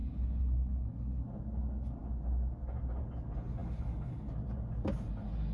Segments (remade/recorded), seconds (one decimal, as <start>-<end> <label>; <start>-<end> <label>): 0.0-1.2 remade; 1.2-5.5 recorded